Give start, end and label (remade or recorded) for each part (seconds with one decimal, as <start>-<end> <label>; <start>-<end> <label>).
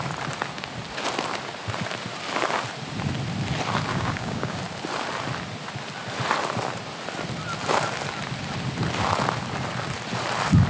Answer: 0.0-3.9 recorded; 3.9-4.6 remade; 4.6-10.7 recorded